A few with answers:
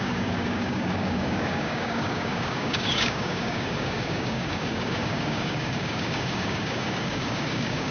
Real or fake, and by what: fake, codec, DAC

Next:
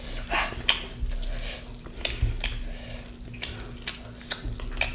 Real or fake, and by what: real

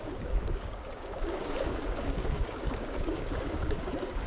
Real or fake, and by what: fake, codec, DAC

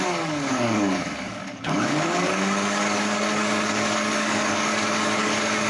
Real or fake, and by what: fake, codec, DAC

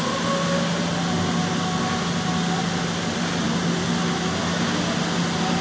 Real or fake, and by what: real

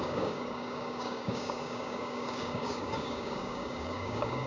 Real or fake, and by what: fake, codec, DAC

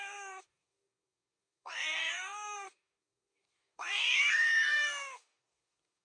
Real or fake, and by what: fake, codec, DAC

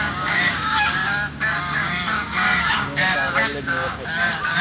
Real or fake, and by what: fake, codec, DAC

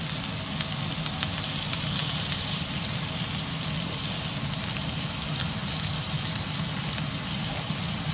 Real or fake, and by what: real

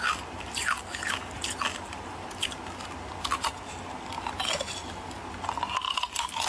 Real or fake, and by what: real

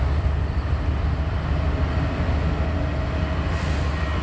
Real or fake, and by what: real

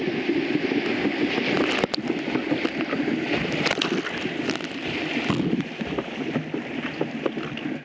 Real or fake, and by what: real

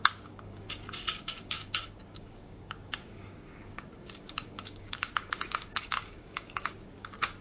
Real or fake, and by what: fake, codec, DAC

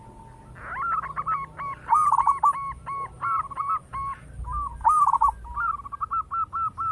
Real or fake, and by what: real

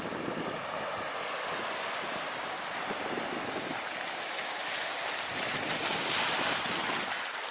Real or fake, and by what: real